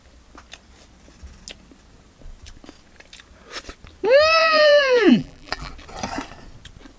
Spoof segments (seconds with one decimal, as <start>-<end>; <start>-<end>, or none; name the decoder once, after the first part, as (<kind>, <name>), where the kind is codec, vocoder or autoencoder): 4.4-5.7 (vocoder, BigVGAN v2)